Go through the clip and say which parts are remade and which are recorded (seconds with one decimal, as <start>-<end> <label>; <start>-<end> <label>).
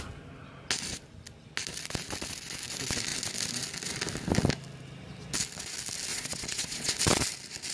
0.0-6.1 recorded; 6.1-6.9 remade; 6.9-7.7 recorded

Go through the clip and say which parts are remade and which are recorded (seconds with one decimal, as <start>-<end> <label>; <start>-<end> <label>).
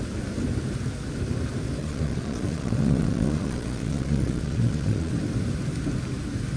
0.0-1.8 recorded; 1.8-5.1 remade; 5.1-6.6 recorded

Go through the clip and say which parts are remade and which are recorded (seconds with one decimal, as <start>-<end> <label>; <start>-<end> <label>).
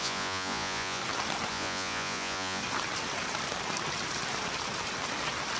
0.0-1.0 remade; 1.0-1.5 recorded; 1.5-2.6 remade; 2.6-5.6 recorded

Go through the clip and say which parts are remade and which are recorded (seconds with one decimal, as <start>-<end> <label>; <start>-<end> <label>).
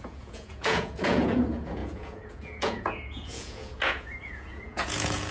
0.0-5.3 remade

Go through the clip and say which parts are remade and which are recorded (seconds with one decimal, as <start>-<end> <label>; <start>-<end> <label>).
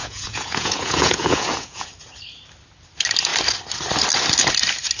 0.0-1.9 remade; 1.9-5.0 recorded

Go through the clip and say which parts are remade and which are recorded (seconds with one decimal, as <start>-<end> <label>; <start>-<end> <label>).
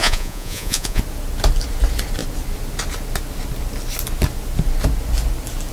0.0-1.0 remade; 1.0-5.7 recorded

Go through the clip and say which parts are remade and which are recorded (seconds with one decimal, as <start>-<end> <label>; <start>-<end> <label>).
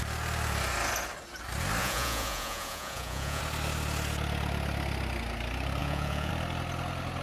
0.0-1.8 recorded; 1.8-3.4 remade; 3.4-5.8 recorded; 5.8-6.3 remade; 6.3-7.2 recorded